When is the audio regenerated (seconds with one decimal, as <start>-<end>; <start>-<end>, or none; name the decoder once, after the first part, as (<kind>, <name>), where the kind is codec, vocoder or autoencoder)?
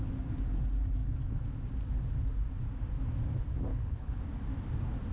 3.7-4.2 (codec, HILCodec)